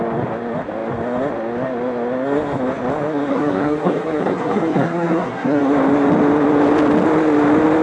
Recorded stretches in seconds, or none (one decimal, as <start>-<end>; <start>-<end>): 0.0-3.3; 5.6-7.8